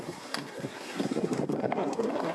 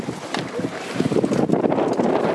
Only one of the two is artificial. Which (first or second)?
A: first